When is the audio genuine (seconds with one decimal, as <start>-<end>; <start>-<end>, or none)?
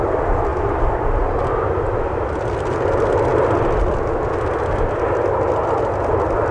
0.0-6.5